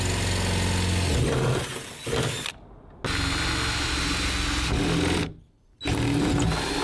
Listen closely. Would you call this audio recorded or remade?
recorded